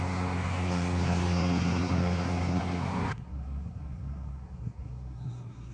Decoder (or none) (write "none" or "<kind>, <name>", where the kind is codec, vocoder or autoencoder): codec, SNAC